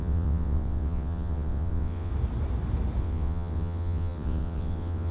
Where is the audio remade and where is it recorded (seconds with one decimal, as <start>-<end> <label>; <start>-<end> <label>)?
0.0-2.1 remade; 2.1-3.0 recorded; 3.0-5.1 remade